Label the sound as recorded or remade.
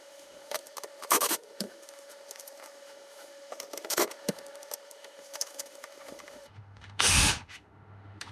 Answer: remade